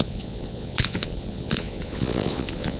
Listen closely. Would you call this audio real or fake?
fake